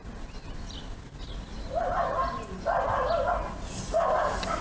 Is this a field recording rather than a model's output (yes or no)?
yes